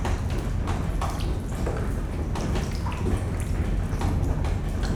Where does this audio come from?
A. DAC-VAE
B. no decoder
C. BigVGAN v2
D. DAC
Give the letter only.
B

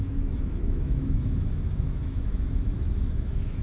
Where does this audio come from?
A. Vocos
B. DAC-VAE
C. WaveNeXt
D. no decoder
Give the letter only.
B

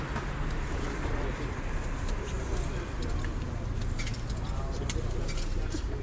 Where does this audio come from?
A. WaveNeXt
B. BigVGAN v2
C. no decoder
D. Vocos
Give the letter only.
C